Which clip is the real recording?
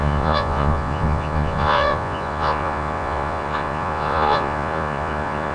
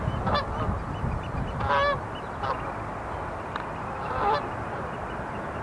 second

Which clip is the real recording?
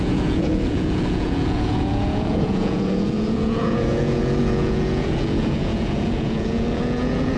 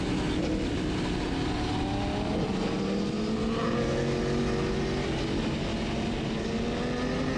second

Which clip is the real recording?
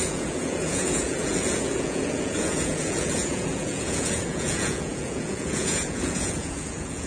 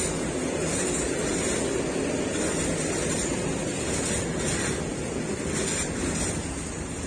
second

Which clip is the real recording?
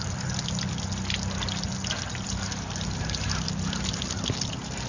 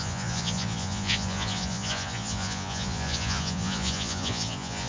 first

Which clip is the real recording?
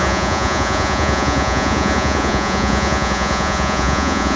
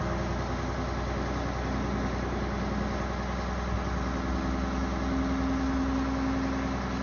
second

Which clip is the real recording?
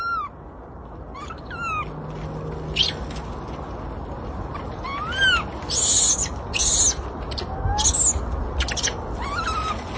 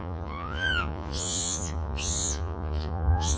first